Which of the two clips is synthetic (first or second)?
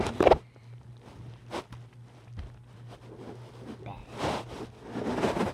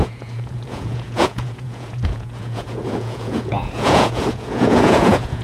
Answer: second